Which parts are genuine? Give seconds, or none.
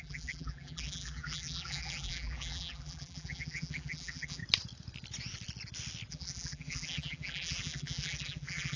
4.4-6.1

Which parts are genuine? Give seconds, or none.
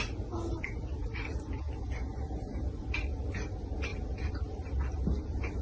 0.0-3.9; 4.9-5.6